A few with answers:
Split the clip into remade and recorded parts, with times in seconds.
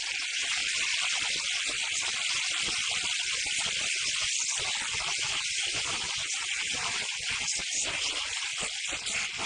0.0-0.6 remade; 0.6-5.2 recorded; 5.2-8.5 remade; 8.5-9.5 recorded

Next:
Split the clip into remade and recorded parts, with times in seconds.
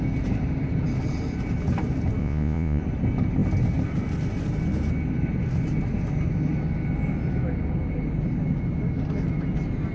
0.0-2.2 recorded; 2.2-2.8 remade; 2.8-9.9 recorded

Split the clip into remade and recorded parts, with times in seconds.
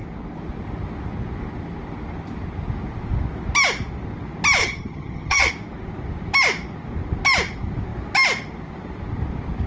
0.0-4.6 recorded; 4.6-5.5 remade; 5.5-9.7 recorded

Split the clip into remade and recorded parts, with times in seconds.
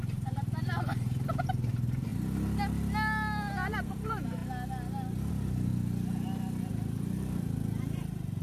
0.0-2.1 remade; 2.1-3.7 recorded; 3.7-4.4 remade; 4.4-5.3 recorded; 5.3-5.7 remade; 5.7-6.7 recorded; 6.7-8.4 remade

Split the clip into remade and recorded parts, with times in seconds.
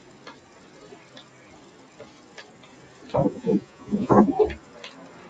0.0-3.2 recorded; 3.2-4.4 remade; 4.4-5.3 recorded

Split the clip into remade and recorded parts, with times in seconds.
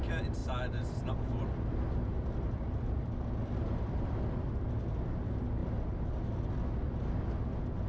0.0-0.4 recorded; 0.4-4.4 remade; 4.4-7.9 recorded